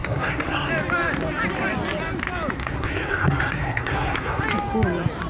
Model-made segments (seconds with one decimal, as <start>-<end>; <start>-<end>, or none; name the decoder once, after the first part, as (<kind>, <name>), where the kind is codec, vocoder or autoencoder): 0.0-0.7 (codec, SNAC); 2.6-4.4